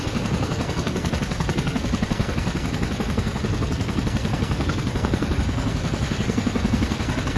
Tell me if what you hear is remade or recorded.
remade